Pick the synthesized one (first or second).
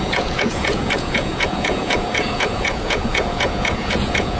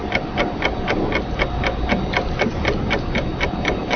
first